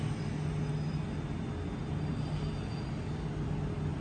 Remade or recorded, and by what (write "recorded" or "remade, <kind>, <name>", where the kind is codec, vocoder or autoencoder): recorded